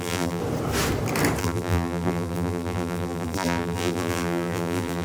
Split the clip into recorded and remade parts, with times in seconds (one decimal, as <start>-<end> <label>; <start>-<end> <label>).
0.0-0.4 remade; 0.4-1.4 recorded; 1.4-5.0 remade